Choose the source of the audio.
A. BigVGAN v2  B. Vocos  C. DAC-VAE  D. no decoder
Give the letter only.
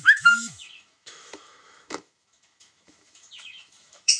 C